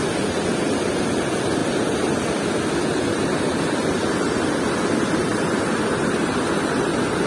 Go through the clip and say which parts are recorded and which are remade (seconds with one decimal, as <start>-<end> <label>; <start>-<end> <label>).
0.0-7.3 recorded